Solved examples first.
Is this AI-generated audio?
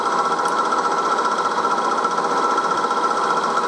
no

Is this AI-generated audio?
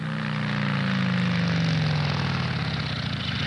no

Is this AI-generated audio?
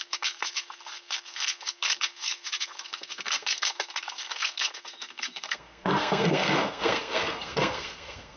yes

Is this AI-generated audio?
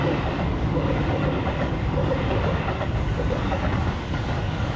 yes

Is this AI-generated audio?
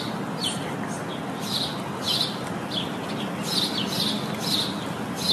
no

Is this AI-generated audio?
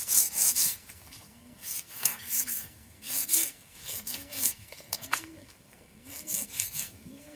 yes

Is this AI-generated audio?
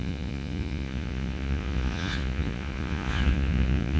yes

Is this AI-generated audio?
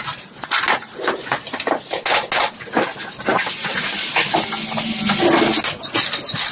no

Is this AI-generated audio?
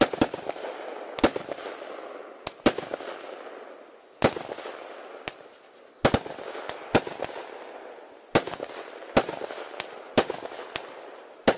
no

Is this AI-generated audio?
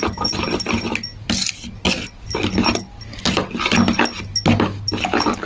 no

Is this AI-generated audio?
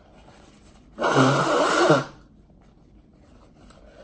no